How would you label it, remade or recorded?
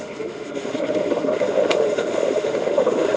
remade